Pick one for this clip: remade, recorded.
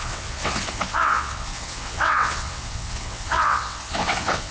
remade